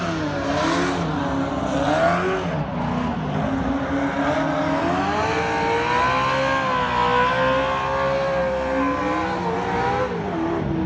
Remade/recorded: recorded